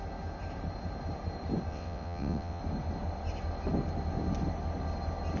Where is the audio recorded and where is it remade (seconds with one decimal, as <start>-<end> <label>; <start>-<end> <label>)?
0.0-1.7 recorded; 1.7-2.6 remade; 2.6-5.4 recorded